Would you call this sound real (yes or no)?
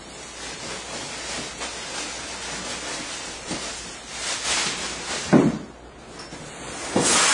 yes